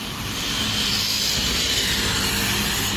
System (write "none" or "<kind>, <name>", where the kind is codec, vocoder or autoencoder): none